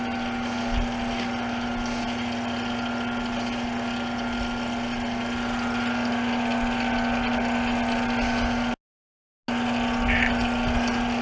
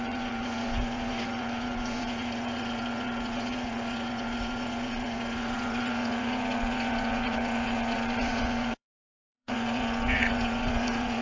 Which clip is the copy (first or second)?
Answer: second